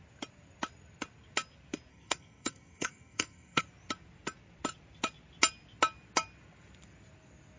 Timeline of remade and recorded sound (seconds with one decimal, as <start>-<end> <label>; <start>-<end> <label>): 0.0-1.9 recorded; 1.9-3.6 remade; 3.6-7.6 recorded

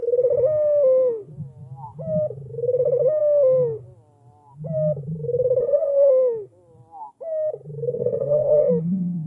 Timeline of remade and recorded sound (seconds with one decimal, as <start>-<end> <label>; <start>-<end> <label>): 0.0-5.6 recorded; 5.6-6.1 remade; 6.1-7.9 recorded; 7.9-8.7 remade; 8.7-9.3 recorded

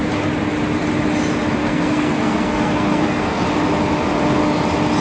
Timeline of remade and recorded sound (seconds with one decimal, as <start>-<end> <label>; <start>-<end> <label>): 0.0-1.6 recorded; 1.6-3.4 remade; 3.4-5.0 recorded

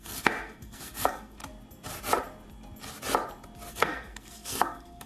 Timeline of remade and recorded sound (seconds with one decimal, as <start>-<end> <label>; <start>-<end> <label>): 0.0-1.4 remade; 1.4-3.7 recorded; 3.7-5.1 remade